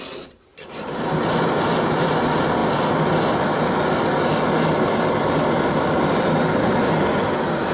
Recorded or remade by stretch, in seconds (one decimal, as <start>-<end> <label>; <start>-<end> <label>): 0.0-0.5 recorded; 0.5-2.1 remade; 2.1-7.7 recorded